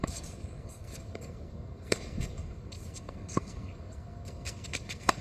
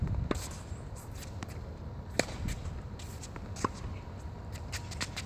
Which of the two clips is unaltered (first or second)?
second